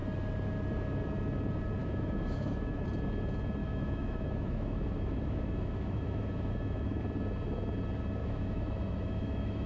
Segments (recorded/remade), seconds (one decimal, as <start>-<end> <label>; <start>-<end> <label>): 0.0-1.8 recorded; 1.8-2.8 remade; 2.8-3.6 recorded; 3.6-7.0 remade; 7.0-8.2 recorded; 8.2-9.7 remade